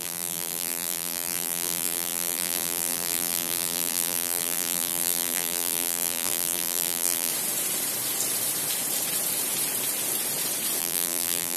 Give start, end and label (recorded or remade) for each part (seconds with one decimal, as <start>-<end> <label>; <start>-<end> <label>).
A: 0.0-7.3 remade; 7.3-10.8 recorded; 10.8-11.6 remade